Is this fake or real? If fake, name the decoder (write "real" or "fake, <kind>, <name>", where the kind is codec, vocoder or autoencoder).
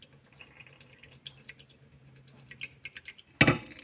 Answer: real